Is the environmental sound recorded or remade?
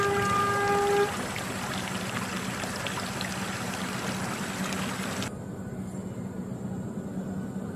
recorded